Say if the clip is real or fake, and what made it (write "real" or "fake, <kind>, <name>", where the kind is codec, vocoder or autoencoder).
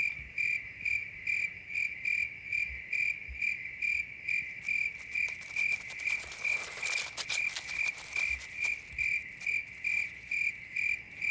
real